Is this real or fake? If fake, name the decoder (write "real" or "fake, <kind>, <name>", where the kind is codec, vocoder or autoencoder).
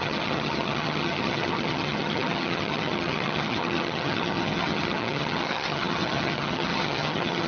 fake, vocoder, HiFi-GAN